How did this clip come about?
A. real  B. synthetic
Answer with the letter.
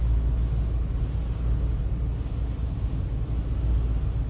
A